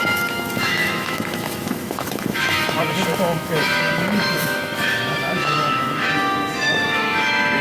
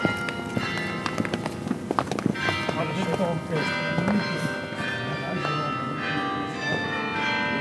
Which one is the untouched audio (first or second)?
second